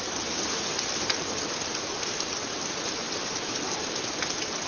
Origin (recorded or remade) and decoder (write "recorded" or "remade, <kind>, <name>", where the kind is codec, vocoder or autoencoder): recorded